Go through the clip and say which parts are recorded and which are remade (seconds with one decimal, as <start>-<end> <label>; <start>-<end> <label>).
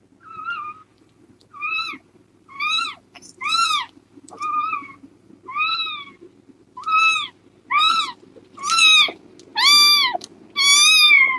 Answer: 0.0-0.9 recorded; 0.9-5.3 remade; 5.3-11.4 recorded